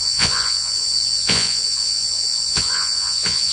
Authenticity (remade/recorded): remade